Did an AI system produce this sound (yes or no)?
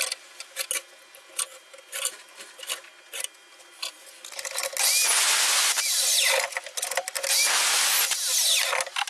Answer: no